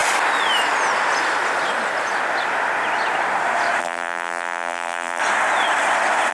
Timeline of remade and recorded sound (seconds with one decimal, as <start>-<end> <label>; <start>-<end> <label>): 0.0-3.8 recorded; 3.8-5.2 remade; 5.2-6.3 recorded